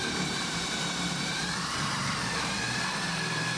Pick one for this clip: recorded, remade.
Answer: remade